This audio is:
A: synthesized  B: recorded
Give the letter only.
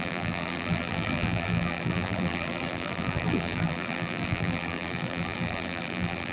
A